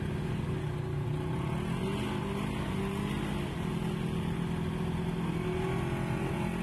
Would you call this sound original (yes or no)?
yes